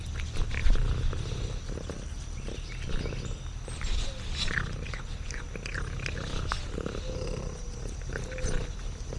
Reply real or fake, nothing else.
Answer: real